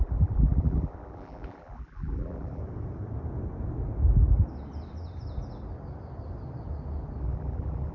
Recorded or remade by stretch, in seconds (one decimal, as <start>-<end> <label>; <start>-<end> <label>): 0.0-2.6 remade; 2.6-7.2 recorded; 7.2-7.9 remade